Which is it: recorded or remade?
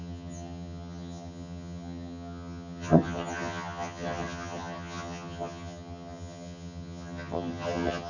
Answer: remade